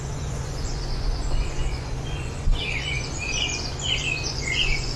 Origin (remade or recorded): remade